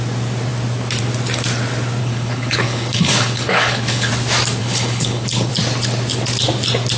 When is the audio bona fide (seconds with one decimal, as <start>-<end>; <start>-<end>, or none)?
0.0-2.0; 4.1-4.6; 5.5-7.0